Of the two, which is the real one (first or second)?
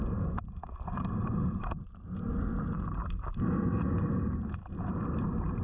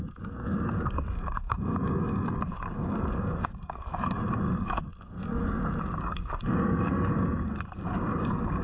first